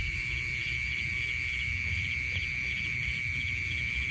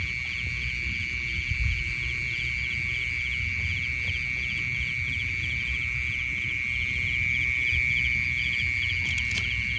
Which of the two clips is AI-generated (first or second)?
first